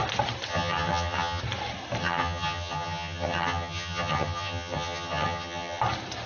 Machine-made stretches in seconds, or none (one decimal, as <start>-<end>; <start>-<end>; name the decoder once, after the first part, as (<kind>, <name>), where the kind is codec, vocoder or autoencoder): 0.5-1.4 (vocoder, HiFi-GAN); 2.0-5.8